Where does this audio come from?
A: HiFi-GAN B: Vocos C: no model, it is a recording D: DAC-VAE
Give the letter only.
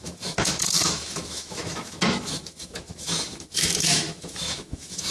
D